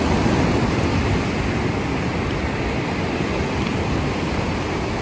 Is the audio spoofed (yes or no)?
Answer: no